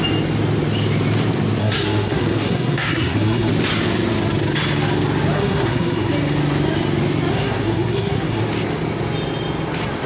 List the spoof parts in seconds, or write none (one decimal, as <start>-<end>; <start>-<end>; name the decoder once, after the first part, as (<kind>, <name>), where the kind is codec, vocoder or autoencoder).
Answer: 1.6-3.5 (codec, SNAC); 5.3-6.1; 7.3-8.4